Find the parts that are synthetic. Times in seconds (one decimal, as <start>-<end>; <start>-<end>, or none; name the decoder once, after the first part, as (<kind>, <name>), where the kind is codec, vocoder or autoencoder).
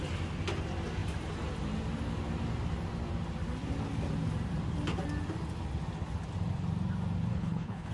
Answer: 7.3-7.9 (codec, HILCodec)